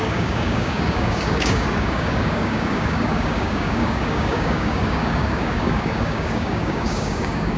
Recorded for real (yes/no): no